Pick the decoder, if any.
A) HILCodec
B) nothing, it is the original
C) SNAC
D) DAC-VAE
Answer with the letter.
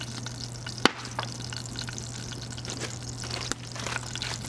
B